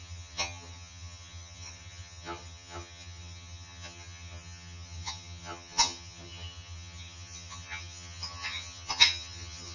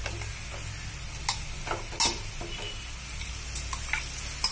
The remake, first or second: first